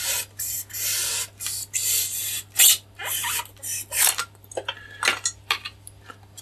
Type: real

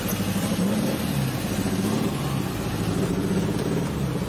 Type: real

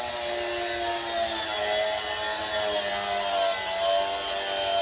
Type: real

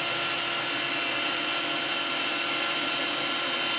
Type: real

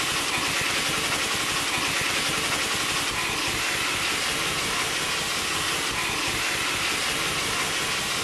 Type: real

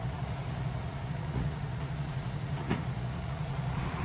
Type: fake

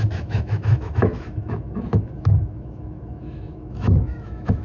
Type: fake